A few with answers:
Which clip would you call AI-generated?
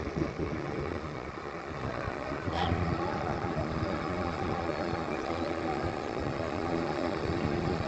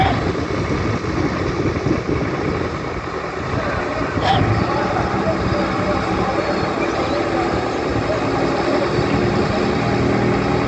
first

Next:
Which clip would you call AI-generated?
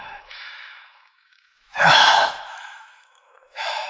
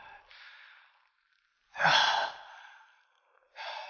first